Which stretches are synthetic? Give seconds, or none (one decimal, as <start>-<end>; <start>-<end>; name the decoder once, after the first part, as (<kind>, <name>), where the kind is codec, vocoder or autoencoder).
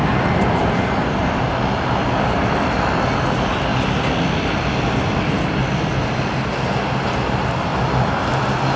7.7-8.3 (vocoder, BigVGAN v2)